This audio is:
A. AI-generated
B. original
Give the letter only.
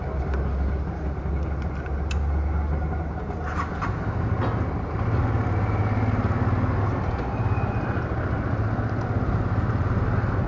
B